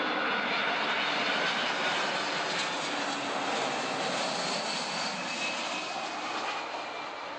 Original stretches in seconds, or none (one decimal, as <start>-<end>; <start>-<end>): 0.0-7.4